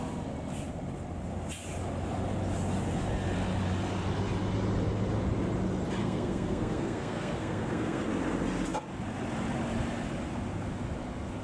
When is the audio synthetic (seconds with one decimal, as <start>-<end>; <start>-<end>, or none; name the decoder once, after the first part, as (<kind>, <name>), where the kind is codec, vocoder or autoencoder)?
6.0-8.0 (codec, SNAC)